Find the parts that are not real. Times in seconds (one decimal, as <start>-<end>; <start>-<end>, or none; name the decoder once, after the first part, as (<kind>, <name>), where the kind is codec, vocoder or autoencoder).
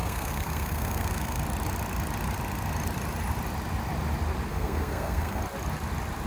0.0-1.4 (codec, SNAC); 4.5-5.4